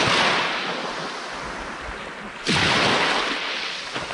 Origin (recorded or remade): recorded